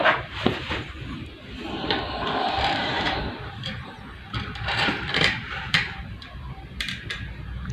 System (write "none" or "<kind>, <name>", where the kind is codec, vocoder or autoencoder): vocoder, BigVGAN v2